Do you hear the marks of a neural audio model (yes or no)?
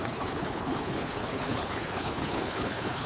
yes